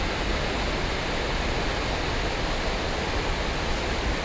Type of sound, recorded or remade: recorded